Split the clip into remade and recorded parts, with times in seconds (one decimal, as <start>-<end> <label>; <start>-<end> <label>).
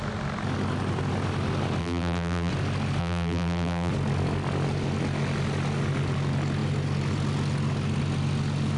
0.0-1.8 recorded; 1.8-2.5 remade; 2.5-3.0 recorded; 3.0-3.9 remade; 3.9-8.8 recorded